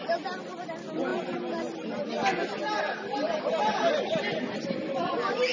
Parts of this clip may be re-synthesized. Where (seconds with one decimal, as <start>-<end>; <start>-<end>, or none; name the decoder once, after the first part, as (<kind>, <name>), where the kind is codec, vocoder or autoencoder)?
none